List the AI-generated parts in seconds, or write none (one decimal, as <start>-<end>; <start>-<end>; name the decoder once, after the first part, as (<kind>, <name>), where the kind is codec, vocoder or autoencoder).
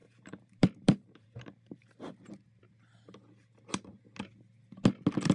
0.0-2.3 (vocoder, BigVGAN v2)